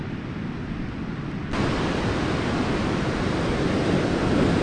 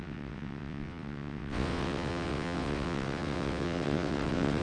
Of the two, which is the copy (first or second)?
second